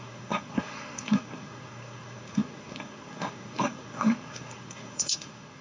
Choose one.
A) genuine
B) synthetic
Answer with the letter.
B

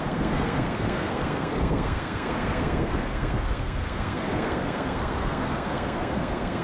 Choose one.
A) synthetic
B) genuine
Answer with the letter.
A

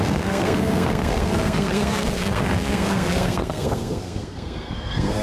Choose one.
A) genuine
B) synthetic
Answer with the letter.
B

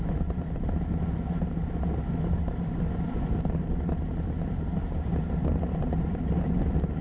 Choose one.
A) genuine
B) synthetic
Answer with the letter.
A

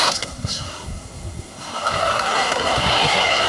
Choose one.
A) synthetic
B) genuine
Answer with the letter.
A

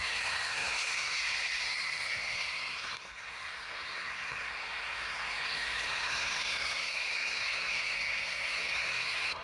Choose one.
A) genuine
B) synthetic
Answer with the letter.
B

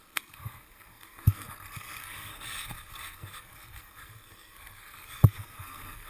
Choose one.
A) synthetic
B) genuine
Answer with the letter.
A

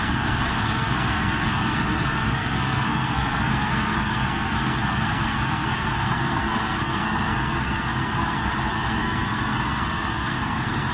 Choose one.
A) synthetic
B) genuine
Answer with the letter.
A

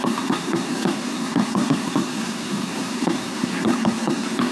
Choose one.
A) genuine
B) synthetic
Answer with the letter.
B